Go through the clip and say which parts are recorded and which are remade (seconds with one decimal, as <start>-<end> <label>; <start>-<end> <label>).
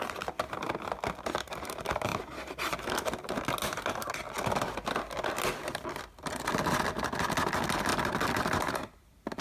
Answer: 0.0-9.4 recorded